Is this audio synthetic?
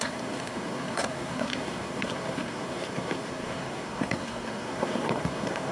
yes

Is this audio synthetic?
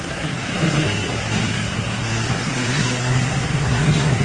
yes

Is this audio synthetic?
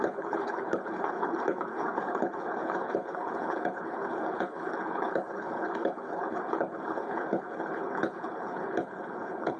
yes